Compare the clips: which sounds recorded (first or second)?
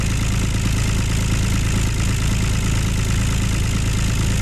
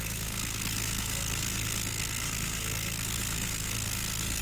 first